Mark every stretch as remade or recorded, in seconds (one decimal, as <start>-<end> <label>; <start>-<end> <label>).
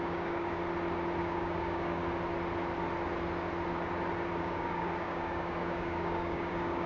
0.0-0.6 remade; 0.6-1.2 recorded; 1.2-2.0 remade; 2.0-4.4 recorded; 4.4-6.9 remade